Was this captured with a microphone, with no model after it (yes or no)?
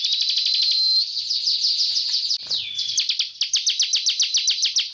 yes